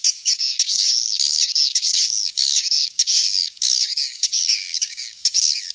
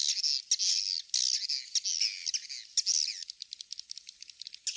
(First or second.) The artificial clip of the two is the first